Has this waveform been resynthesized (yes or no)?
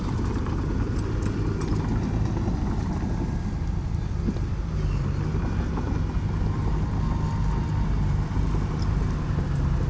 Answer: no